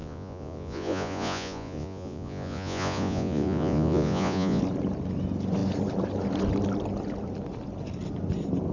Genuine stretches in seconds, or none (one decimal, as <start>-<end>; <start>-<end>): 4.6-8.7